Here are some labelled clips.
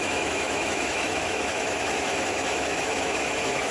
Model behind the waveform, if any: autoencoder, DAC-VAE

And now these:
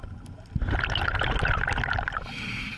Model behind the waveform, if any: none